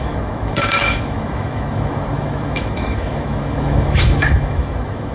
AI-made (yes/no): yes